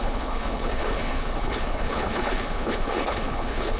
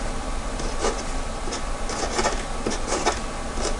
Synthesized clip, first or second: first